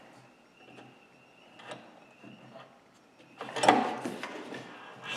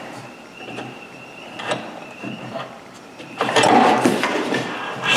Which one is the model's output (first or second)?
second